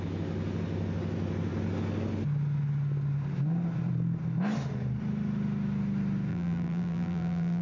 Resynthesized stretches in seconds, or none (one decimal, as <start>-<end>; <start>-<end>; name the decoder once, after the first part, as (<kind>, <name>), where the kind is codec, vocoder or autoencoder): 6.3-7.6 (vocoder, BigVGAN v2)